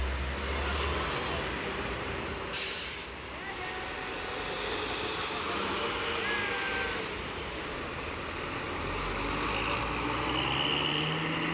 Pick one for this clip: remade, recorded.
recorded